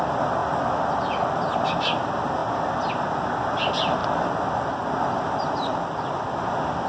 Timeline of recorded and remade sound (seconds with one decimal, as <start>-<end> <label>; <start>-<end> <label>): 0.0-6.9 recorded

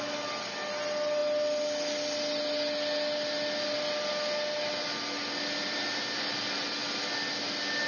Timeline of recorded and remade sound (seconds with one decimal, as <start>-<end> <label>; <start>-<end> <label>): 0.0-7.9 recorded

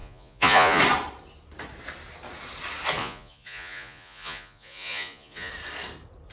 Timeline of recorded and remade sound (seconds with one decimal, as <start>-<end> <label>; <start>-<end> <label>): 0.0-0.8 remade; 0.8-3.0 recorded; 3.0-5.5 remade; 5.5-6.3 recorded

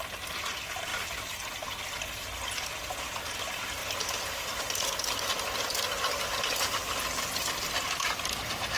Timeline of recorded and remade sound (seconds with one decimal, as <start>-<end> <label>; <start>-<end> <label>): 0.0-8.8 recorded

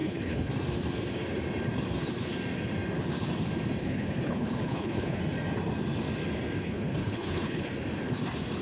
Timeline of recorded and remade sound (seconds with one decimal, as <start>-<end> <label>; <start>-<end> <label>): 0.0-0.5 remade; 0.5-3.8 recorded; 3.8-5.2 remade; 5.2-6.6 recorded; 6.6-7.7 remade; 7.7-8.6 recorded